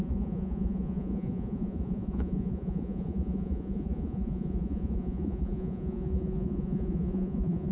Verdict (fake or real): fake